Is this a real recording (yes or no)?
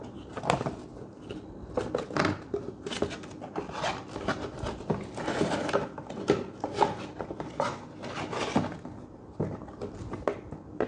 yes